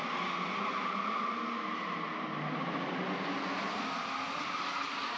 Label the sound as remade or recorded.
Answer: recorded